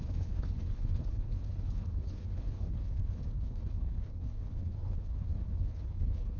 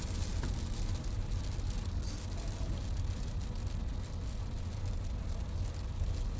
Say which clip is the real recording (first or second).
second